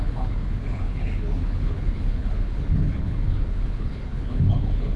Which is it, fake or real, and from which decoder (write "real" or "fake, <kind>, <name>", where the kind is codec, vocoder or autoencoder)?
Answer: fake, codec, HILCodec